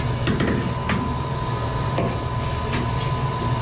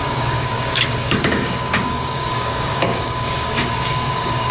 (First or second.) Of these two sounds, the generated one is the second